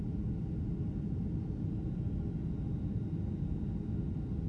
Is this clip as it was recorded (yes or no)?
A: yes